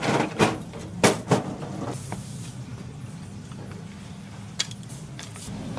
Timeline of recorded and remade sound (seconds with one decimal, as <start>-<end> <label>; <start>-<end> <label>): 0.0-5.8 recorded